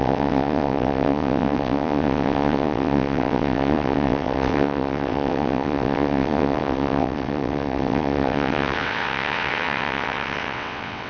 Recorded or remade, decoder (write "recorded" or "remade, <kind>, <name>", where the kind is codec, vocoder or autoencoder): remade, vocoder, WaveNeXt